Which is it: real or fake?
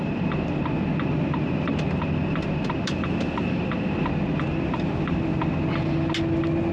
real